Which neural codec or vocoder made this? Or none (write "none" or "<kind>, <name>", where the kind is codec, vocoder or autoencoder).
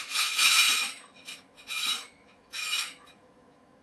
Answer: autoencoder, DAC-VAE